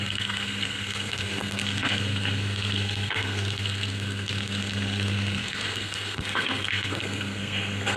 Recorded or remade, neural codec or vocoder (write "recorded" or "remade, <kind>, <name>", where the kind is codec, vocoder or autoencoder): remade, codec, SNAC